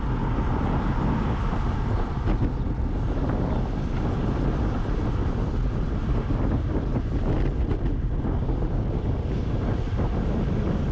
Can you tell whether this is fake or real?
real